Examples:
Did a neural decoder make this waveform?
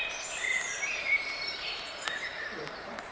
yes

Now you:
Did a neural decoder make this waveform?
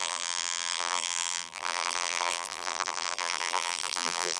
yes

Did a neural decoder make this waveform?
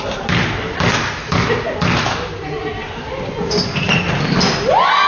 no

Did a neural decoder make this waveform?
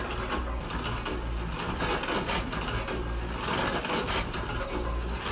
no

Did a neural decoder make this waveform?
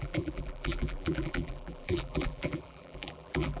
yes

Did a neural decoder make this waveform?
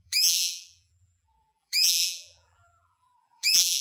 yes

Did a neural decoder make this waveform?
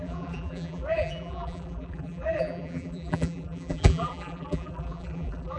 yes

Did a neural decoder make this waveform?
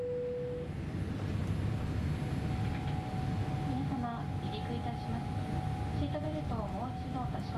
no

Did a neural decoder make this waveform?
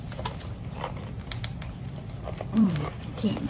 yes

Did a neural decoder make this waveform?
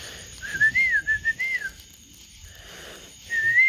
no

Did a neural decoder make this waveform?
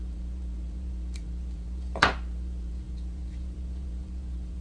yes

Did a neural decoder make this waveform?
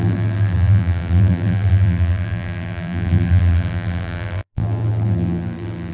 yes